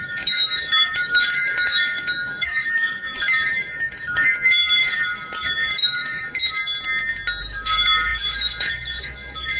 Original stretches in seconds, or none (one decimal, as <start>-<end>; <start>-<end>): 6.6-7.4